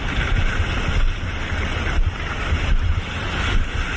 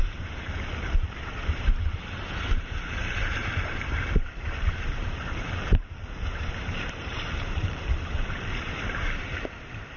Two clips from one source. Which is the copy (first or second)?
second